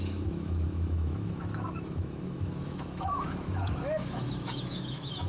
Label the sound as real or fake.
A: fake